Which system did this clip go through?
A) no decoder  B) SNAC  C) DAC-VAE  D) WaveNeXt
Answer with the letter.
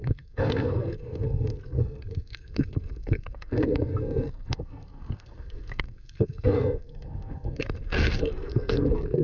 B